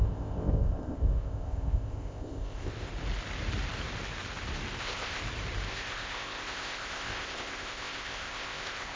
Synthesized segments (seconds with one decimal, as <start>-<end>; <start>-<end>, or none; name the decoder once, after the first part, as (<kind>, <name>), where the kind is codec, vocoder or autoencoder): 0.0-2.9 (codec, ZipCodec); 4.8-5.2; 5.7-9.0